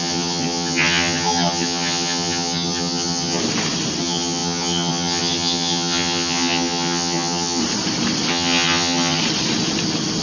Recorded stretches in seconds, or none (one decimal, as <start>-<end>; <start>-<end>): 3.4-4.0; 7.6-8.3; 9.2-10.2